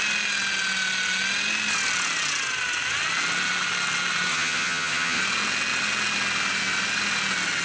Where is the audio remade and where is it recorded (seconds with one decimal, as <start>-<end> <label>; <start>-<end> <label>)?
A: 0.0-4.3 recorded; 4.3-5.2 remade; 5.2-7.6 recorded